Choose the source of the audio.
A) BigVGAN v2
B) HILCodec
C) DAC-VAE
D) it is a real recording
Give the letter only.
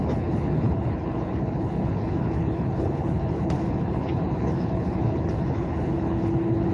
B